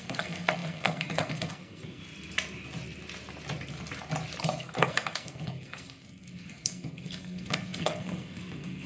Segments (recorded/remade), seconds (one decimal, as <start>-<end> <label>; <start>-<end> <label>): 0.0-2.0 remade; 2.0-4.4 recorded; 4.4-8.9 remade